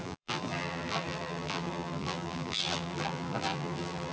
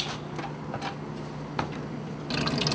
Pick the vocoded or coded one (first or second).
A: first